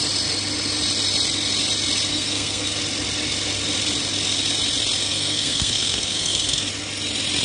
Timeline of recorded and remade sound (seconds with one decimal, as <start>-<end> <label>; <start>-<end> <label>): 0.0-2.1 recorded; 2.1-2.8 remade; 2.8-5.0 recorded; 5.0-6.7 remade; 6.7-7.4 recorded